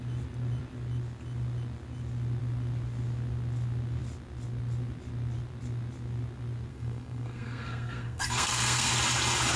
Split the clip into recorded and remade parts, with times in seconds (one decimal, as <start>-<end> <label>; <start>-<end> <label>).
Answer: 0.0-6.7 recorded; 6.7-8.9 remade; 8.9-9.6 recorded